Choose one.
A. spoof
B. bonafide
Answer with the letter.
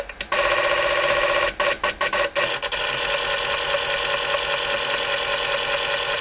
B